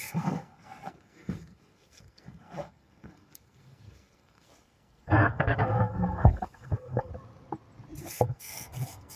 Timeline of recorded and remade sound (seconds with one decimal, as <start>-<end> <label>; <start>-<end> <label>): 0.0-7.1 remade; 7.1-8.0 recorded; 8.0-9.2 remade